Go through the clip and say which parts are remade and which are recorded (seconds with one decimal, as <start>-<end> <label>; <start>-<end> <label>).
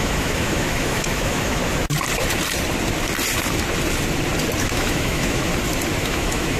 0.0-1.6 remade; 1.6-4.6 recorded; 4.6-5.5 remade; 5.5-6.0 recorded; 6.0-6.6 remade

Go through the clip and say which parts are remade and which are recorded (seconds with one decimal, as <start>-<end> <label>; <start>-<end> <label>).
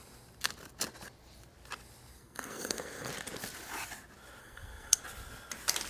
0.0-2.1 recorded; 2.1-3.1 remade; 3.1-4.4 recorded; 4.4-5.0 remade; 5.0-5.9 recorded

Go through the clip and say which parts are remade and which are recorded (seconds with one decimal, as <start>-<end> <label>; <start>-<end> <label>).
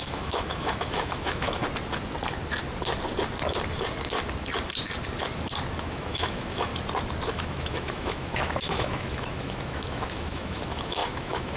0.0-1.6 remade; 1.6-5.8 recorded; 5.8-6.7 remade; 6.7-7.3 recorded; 7.3-11.6 remade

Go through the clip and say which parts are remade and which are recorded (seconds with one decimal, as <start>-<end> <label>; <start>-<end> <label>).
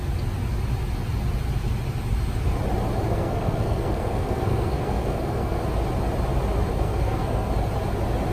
0.0-3.1 recorded; 3.1-5.6 remade; 5.6-6.7 recorded; 6.7-7.5 remade; 7.5-8.3 recorded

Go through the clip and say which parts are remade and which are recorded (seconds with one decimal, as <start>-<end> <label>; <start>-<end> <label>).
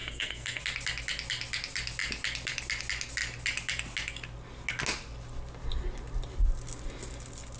0.0-0.6 remade; 0.6-7.6 recorded